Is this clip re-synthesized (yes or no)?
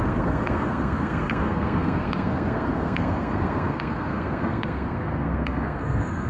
yes